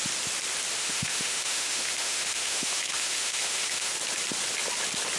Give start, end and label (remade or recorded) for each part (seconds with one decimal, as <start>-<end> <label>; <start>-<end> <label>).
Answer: 0.0-0.8 recorded; 0.8-3.9 remade; 3.9-5.2 recorded